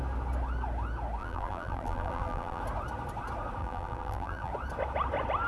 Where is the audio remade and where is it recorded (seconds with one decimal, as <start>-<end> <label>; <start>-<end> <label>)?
0.0-1.2 recorded; 1.2-2.6 remade; 2.6-3.6 recorded; 3.6-4.5 remade; 4.5-5.5 recorded